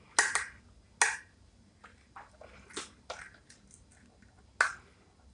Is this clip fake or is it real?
real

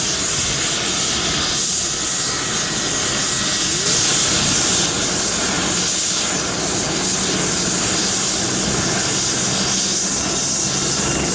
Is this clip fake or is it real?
real